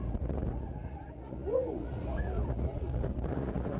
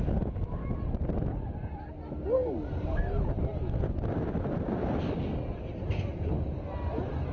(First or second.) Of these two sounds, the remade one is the first